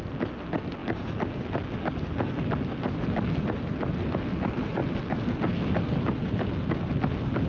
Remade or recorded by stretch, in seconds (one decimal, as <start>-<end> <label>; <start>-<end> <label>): 0.0-7.5 recorded